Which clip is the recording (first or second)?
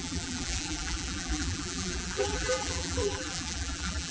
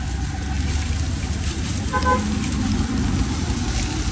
second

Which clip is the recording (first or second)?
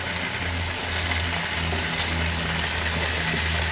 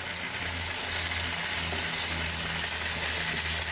second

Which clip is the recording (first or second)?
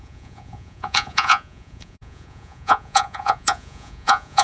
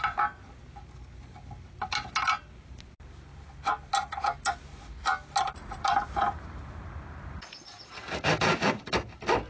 second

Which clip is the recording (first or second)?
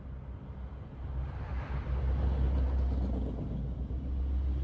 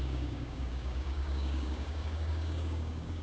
first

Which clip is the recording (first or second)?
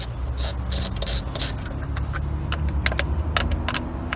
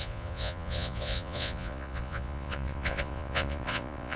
first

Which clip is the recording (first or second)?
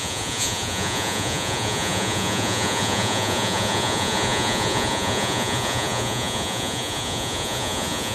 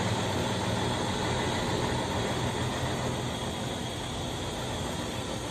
second